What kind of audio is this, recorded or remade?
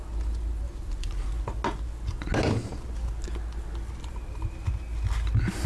recorded